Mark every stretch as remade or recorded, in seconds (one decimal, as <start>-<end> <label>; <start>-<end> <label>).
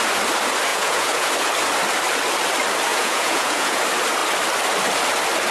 0.0-0.7 recorded; 0.7-1.3 remade; 1.3-2.9 recorded; 2.9-3.8 remade; 3.8-5.5 recorded